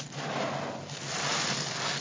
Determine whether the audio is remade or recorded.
remade